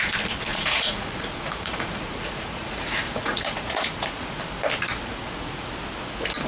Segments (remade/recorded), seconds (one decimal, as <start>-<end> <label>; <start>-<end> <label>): 0.0-0.5 recorded; 0.5-4.4 remade; 4.4-5.1 recorded; 5.1-5.7 remade; 5.7-6.5 recorded